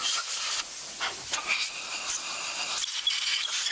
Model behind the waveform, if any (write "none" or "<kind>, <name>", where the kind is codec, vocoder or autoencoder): none